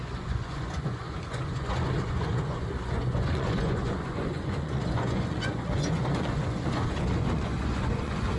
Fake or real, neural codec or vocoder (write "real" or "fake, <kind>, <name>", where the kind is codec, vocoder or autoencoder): fake, vocoder, Vocos